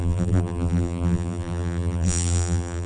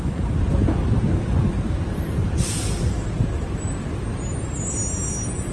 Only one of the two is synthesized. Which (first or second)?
first